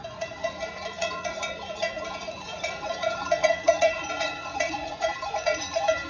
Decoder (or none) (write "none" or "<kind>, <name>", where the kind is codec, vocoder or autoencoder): vocoder, Vocos